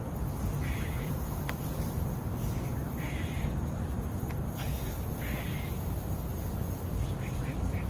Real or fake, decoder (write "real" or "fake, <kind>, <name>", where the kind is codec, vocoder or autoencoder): fake, vocoder, BigVGAN v2